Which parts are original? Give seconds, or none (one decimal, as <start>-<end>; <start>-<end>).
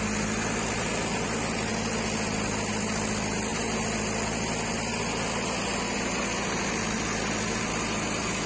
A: 0.0-8.5